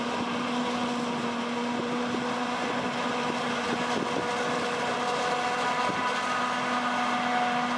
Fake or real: real